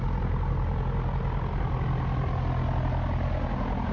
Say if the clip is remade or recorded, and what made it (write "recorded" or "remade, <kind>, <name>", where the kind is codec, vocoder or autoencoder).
recorded